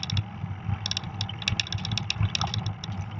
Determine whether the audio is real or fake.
real